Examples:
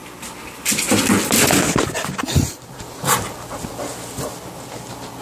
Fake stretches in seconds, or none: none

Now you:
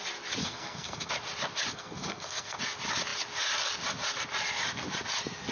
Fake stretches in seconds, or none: 0.4-1.1 (codec, SNAC); 1.7-2.6